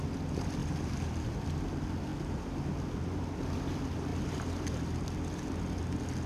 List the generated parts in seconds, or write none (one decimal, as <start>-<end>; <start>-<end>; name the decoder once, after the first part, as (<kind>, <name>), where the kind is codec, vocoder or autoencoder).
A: 0.6-1.6 (vocoder, BigVGAN v2)